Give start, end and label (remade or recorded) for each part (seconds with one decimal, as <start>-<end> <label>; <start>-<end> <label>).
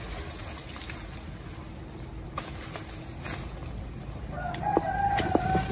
0.0-5.7 recorded